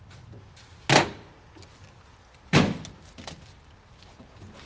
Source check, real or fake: real